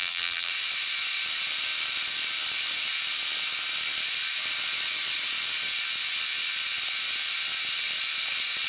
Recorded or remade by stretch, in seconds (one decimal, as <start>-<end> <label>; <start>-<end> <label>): 0.0-0.5 remade; 0.5-8.7 recorded